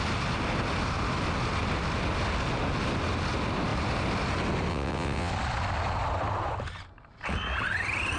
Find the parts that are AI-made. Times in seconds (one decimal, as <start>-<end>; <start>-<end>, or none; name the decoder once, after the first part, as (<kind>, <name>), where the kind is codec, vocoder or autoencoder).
4.7-5.3 (vocoder, WaveNeXt)